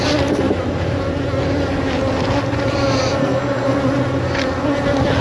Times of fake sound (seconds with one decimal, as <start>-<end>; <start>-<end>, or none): 3.2-3.8